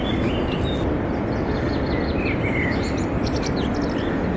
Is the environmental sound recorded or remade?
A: recorded